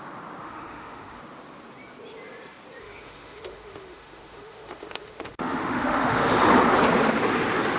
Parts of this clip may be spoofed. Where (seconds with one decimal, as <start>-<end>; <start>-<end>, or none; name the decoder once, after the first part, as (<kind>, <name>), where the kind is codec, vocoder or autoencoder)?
0.4-1.2 (autoencoder, DAC-VAE); 2.8-6.3